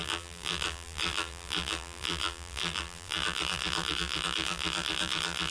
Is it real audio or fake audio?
fake